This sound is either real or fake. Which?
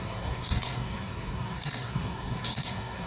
fake